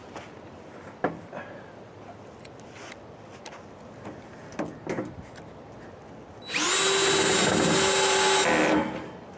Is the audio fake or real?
real